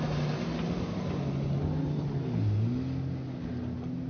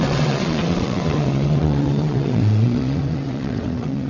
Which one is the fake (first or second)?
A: second